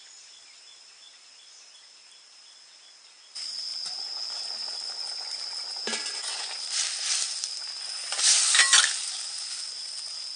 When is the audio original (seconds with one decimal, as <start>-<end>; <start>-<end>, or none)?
0.0-10.4